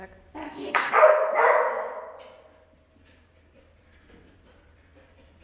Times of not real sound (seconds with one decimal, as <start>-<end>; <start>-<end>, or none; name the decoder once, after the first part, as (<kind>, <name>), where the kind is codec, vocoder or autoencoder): 0.4-1.3 (codec, SNAC)